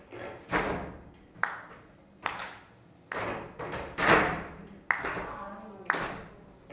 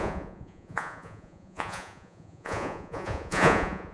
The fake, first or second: second